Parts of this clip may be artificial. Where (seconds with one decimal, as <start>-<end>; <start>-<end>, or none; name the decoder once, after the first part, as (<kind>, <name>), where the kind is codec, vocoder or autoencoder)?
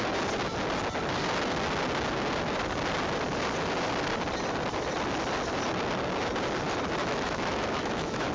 7.0-8.3 (autoencoder, DAC-VAE)